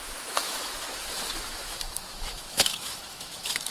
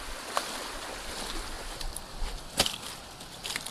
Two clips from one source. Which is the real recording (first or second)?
second